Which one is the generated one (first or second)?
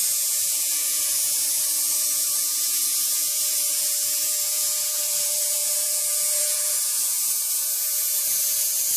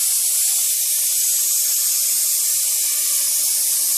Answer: first